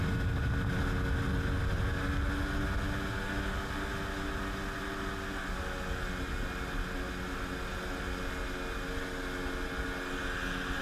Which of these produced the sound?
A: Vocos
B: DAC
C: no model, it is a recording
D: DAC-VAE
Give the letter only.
C